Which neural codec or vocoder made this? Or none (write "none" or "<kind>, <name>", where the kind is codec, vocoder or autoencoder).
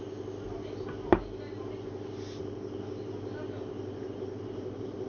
none